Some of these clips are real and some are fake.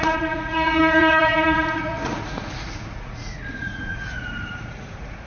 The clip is fake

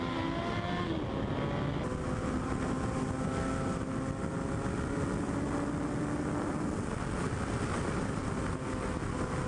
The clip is real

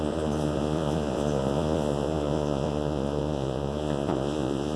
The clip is fake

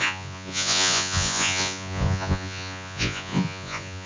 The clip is fake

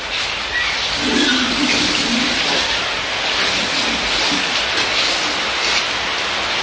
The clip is real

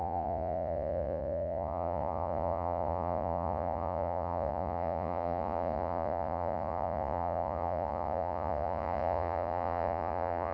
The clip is fake